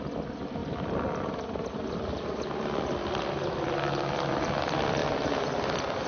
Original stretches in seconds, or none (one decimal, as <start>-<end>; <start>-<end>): 0.0-6.1